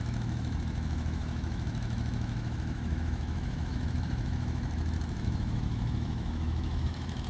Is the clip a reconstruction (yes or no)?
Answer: yes